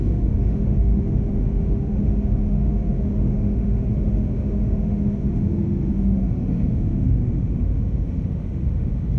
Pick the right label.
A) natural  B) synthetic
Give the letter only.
B